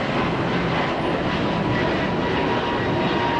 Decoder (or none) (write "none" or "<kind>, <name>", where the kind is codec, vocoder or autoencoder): none